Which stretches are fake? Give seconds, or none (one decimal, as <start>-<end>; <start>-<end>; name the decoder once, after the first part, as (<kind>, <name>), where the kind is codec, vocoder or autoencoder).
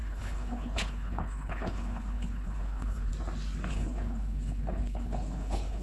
0.0-3.1 (codec, HILCodec); 3.7-5.8